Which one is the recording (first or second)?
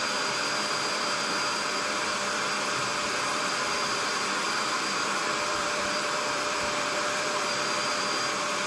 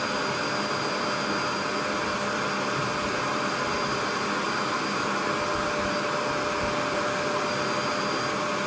second